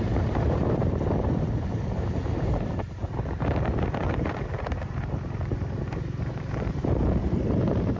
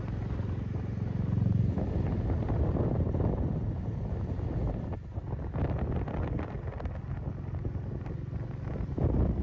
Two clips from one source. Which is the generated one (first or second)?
first